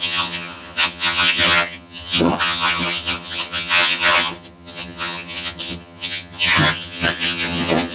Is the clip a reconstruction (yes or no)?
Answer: yes